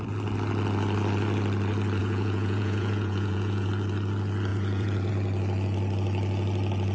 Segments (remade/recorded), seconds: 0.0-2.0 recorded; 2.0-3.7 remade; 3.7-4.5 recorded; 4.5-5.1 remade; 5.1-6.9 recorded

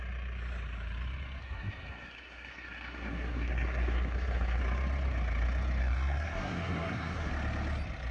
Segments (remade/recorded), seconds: 0.0-1.4 recorded; 1.4-4.6 remade; 4.6-5.8 recorded; 5.8-7.3 remade; 7.3-8.1 recorded

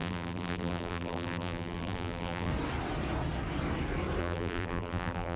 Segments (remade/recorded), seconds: 0.0-2.5 remade; 2.5-4.2 recorded; 4.2-5.4 remade

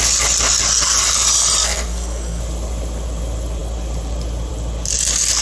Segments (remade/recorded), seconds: 0.0-1.6 recorded; 1.6-2.4 remade; 2.4-5.4 recorded

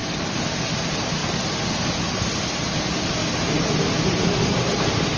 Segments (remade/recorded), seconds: 0.0-5.2 recorded

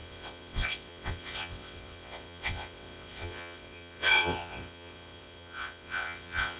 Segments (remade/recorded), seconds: 0.0-6.6 remade